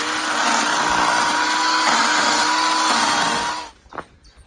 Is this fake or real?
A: real